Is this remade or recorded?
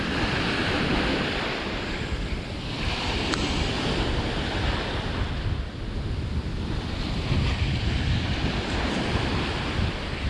remade